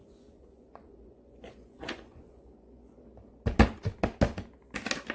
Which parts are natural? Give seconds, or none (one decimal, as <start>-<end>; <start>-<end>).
3.0-5.1